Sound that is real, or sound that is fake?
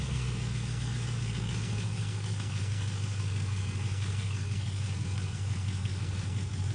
fake